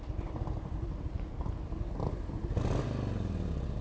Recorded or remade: recorded